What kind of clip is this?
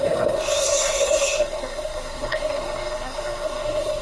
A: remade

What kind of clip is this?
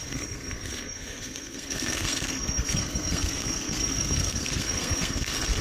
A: remade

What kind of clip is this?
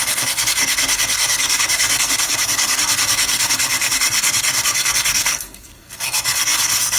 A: remade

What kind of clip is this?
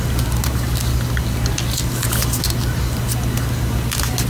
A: recorded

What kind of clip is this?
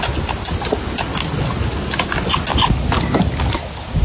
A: recorded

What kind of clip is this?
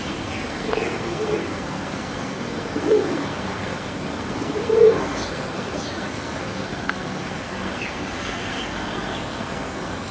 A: remade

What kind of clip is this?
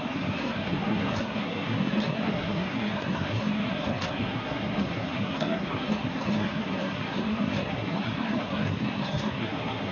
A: remade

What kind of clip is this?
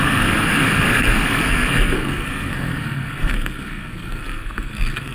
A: remade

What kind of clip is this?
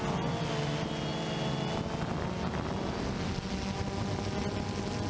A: recorded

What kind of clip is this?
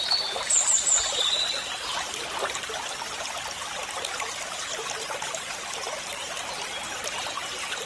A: recorded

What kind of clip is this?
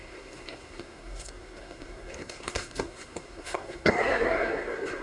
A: remade